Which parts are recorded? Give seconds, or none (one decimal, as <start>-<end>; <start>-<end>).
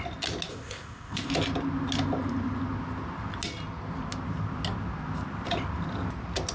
0.0-0.5; 1.3-6.5